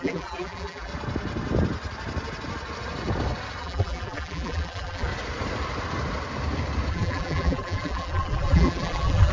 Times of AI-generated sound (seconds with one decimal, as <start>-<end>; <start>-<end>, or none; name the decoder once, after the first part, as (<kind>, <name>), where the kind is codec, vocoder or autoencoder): 0.0-0.9 (vocoder, BigVGAN v2); 3.6-5.1; 6.9-9.3